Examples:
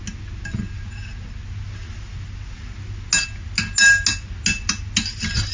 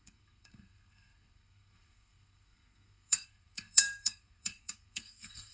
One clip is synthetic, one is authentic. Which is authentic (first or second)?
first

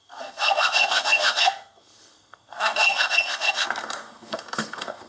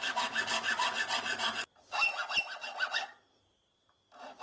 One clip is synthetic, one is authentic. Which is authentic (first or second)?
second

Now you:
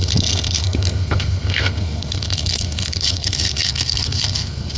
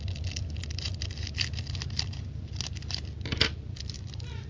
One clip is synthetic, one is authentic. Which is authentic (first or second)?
second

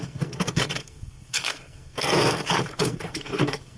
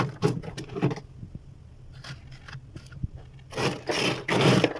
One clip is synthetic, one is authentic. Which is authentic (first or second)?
second